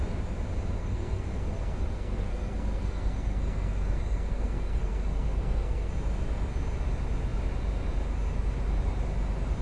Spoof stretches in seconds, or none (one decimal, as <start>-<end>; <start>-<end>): 0.8-5.9